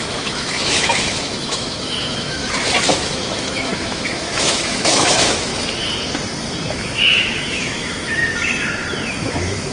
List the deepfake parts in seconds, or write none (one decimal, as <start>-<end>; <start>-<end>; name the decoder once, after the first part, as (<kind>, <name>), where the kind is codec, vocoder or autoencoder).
0.0-2.4 (autoencoder, DAC-VAE); 2.9-5.5; 6.7-8.2; 9.1-9.7